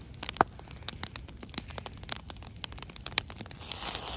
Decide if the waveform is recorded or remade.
recorded